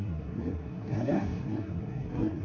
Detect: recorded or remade remade